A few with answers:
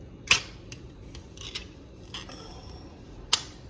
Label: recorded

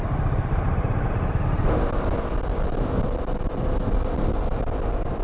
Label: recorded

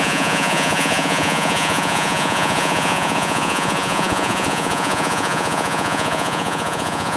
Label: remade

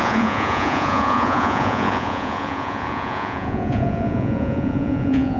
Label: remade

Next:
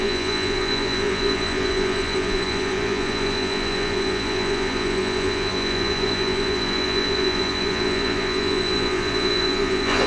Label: remade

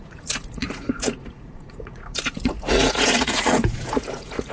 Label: remade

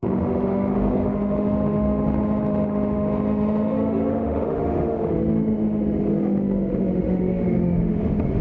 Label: remade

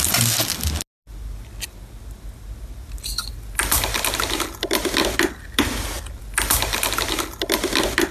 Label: recorded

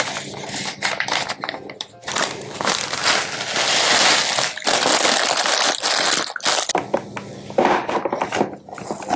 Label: recorded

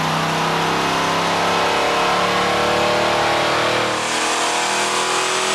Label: recorded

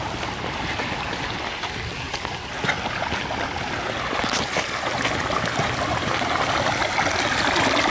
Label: recorded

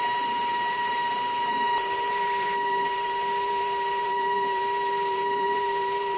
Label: remade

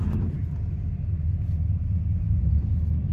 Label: recorded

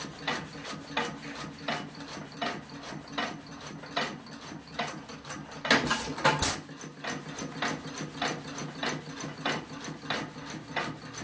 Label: recorded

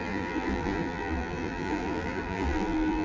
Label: remade